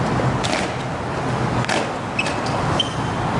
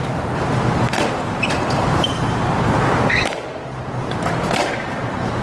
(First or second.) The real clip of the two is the first